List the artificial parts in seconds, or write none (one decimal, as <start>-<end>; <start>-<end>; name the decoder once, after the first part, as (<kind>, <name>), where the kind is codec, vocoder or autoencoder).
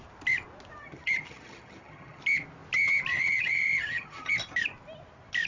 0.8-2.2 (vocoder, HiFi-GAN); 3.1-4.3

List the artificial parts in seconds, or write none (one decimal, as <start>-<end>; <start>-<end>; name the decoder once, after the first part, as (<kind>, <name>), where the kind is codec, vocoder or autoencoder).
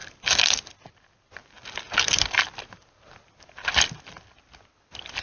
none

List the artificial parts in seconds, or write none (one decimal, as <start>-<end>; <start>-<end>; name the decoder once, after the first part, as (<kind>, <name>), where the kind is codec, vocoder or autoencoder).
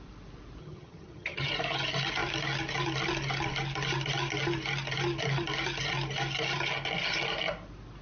0.6-1.5 (vocoder, HiFi-GAN)